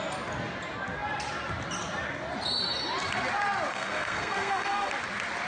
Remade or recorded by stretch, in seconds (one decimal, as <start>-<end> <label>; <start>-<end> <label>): 0.0-3.7 recorded; 3.7-4.9 remade; 4.9-5.5 recorded